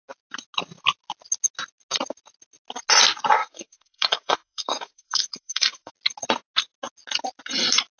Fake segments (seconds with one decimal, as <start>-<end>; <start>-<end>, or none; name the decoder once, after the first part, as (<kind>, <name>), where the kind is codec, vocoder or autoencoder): 3.4-5.9 (autoencoder, DAC-VAE)